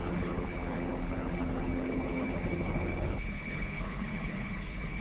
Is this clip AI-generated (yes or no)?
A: yes